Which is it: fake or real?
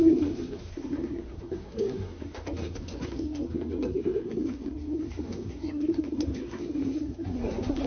fake